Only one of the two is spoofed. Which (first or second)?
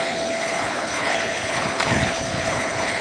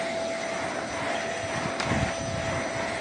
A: first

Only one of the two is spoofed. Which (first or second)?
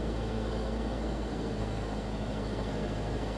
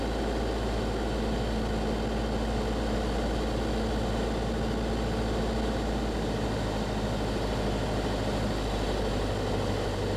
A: first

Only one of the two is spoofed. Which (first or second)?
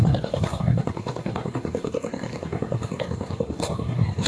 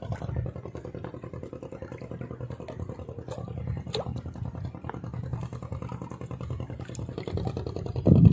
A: first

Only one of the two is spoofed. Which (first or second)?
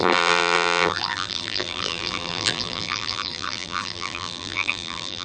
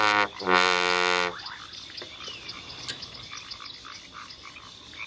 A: first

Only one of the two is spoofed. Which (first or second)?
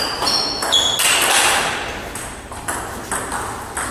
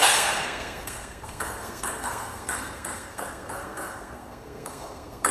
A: second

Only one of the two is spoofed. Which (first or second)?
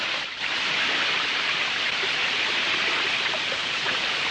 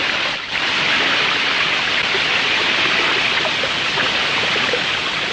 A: first